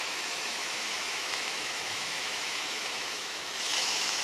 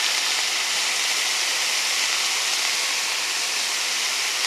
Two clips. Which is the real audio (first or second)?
second